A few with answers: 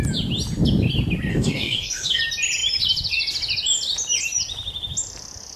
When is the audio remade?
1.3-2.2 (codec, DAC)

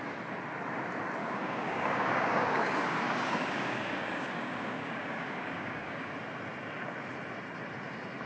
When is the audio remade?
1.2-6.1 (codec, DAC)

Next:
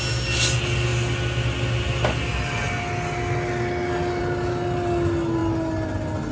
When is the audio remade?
none

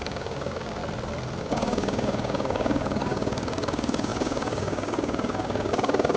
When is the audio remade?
0.0-0.8 (codec, DAC); 1.4-6.2

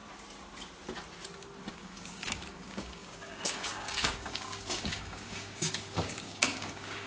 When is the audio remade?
1.7-7.1 (codec, DAC)

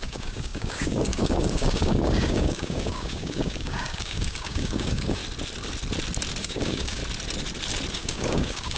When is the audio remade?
0.0-5.2 (codec, DAC); 6.4-7.0; 7.9-8.8

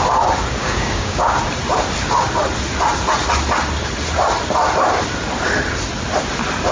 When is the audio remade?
0.6-1.4 (codec, DAC)

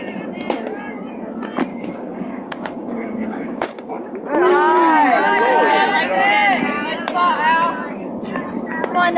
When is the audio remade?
1.7-3.9 (codec, DAC)